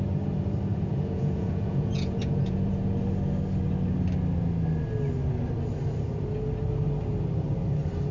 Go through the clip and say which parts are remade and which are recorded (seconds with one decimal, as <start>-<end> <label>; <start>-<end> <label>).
0.0-0.7 recorded; 0.7-2.7 remade; 2.7-8.1 recorded